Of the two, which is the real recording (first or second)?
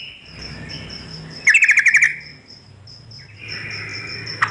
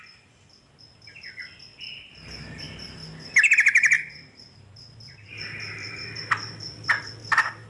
first